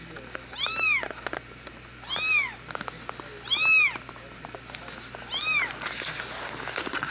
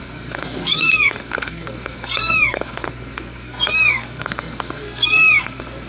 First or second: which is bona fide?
first